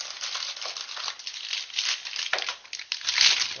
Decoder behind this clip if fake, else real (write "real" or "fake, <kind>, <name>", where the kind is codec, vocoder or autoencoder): real